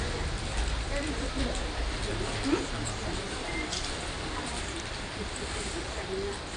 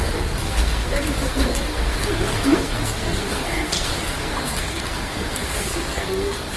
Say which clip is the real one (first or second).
first